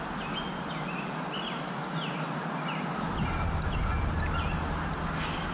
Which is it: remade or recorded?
recorded